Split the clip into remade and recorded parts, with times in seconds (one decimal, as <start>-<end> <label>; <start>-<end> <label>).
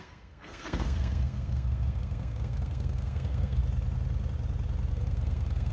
0.0-3.6 remade; 3.6-4.9 recorded; 4.9-5.7 remade